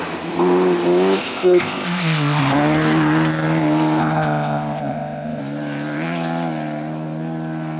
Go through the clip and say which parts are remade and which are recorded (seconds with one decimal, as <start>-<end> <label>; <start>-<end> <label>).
0.0-1.2 recorded; 1.2-2.4 remade; 2.4-4.0 recorded; 4.0-5.4 remade; 5.4-7.8 recorded

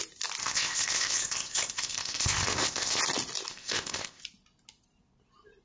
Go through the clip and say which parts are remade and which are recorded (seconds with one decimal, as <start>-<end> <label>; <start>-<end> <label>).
0.0-0.4 recorded; 0.4-3.0 remade; 3.0-3.5 recorded; 3.5-4.2 remade; 4.2-5.6 recorded

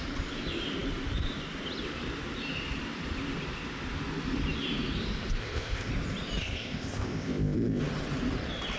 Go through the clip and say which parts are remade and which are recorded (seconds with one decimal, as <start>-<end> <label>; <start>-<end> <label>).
0.0-5.4 recorded; 5.4-5.9 remade; 5.9-6.4 recorded; 6.4-7.8 remade; 7.8-8.8 recorded

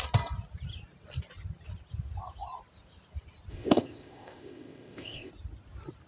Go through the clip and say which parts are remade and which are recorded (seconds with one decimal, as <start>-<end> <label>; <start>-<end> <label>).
0.0-3.5 recorded; 3.5-5.3 remade; 5.3-6.1 recorded

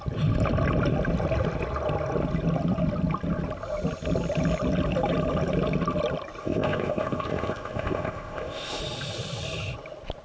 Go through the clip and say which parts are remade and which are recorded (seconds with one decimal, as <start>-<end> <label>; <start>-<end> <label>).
0.0-6.4 recorded; 6.4-8.8 remade; 8.8-10.2 recorded

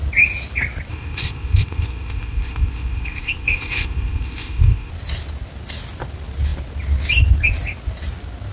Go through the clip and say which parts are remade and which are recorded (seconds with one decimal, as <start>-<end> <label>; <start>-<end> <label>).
0.0-0.9 recorded; 0.9-4.9 remade; 4.9-8.5 recorded

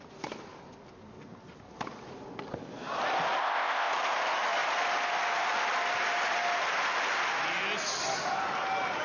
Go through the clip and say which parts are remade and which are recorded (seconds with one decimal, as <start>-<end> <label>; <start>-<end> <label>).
0.0-3.4 recorded; 3.4-3.9 remade; 3.9-9.0 recorded

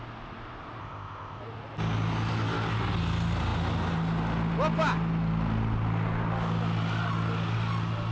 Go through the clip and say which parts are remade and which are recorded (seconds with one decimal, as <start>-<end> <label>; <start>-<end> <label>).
0.0-0.8 recorded; 0.8-1.4 remade; 1.4-8.1 recorded